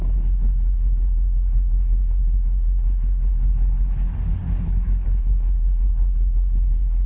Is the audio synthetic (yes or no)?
yes